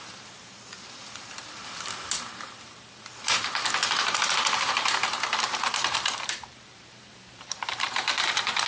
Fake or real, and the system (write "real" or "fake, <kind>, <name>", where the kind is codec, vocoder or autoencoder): fake, vocoder, BigVGAN v2